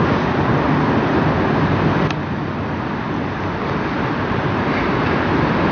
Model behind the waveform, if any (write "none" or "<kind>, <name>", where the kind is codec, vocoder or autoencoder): none